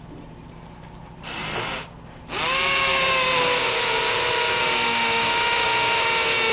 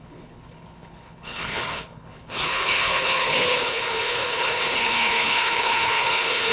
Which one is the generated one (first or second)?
second